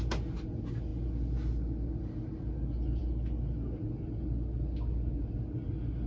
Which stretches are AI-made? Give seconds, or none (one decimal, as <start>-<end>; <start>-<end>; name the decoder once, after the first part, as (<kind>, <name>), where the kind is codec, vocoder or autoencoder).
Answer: none

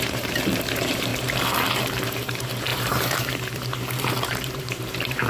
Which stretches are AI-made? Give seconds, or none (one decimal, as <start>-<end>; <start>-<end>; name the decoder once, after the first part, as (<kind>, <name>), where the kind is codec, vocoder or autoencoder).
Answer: 0.0-1.1 (vocoder, BigVGAN v2); 1.8-5.3

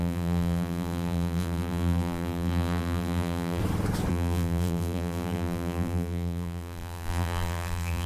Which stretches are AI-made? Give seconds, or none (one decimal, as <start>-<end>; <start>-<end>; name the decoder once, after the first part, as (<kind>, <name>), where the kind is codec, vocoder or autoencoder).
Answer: 0.0-3.6 (vocoder, BigVGAN v2); 4.1-8.1

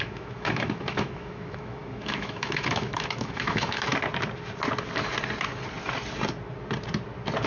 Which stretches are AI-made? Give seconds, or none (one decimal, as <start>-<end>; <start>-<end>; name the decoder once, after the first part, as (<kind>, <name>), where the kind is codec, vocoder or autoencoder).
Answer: 0.0-3.9 (autoencoder, DAC-VAE)

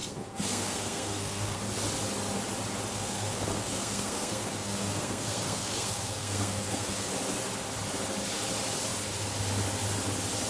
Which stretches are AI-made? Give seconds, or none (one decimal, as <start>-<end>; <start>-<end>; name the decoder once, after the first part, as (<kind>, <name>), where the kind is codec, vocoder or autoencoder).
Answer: 0.0-1.6 (codec, SNAC); 2.9-7.1

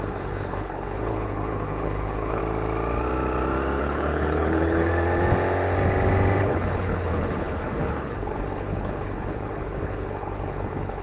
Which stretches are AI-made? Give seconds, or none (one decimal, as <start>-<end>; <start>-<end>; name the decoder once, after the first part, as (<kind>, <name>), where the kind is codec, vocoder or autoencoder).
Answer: 0.0-2.4 (codec, HILCodec); 3.8-4.9; 6.4-11.0

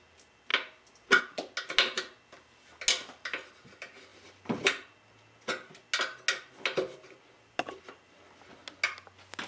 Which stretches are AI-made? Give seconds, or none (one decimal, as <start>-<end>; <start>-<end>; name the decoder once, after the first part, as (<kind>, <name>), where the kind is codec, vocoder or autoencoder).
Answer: none